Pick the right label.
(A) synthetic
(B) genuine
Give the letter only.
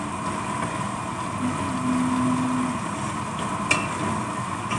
B